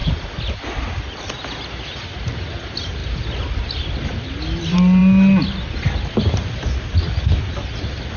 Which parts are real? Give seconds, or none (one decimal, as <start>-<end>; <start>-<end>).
0.0-3.0; 4.4-8.2